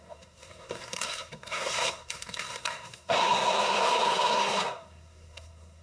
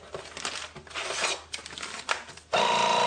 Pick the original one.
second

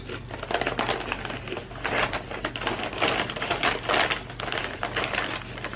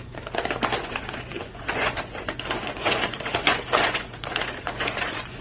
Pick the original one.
first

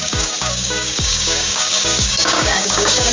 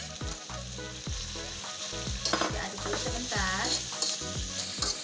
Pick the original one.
second